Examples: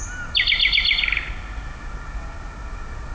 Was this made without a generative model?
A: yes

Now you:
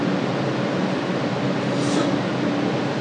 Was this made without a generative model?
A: yes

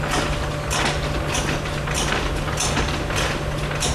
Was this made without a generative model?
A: yes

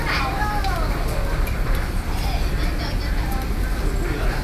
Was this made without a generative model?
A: yes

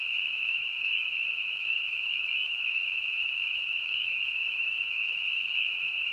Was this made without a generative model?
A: no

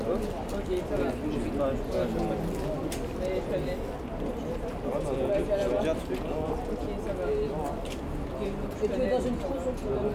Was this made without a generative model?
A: yes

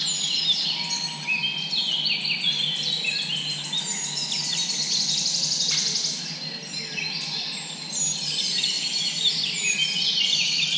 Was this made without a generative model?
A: yes